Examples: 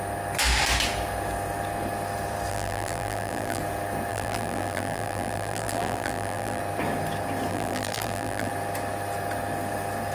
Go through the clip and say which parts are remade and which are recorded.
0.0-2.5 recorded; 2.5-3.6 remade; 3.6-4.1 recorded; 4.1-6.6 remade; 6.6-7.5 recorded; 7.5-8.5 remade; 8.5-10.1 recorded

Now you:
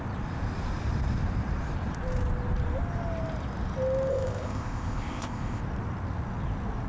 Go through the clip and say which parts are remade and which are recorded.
0.0-4.1 recorded; 4.1-5.6 remade; 5.6-6.9 recorded

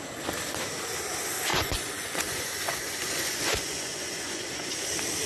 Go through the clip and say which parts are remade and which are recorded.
0.0-1.5 recorded; 1.5-4.7 remade; 4.7-5.3 recorded